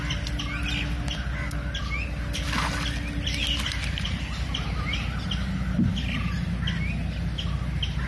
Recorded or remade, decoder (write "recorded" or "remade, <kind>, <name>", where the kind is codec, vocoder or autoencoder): recorded